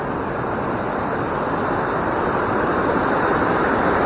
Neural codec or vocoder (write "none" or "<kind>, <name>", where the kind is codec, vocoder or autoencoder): vocoder, BigVGAN v2